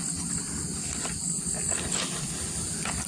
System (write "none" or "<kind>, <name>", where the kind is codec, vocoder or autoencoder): none